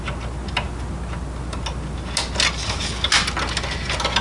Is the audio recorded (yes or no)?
yes